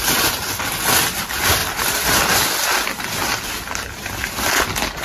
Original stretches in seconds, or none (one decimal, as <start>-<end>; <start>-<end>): 0.0-5.0